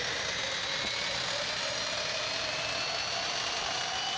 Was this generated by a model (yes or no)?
no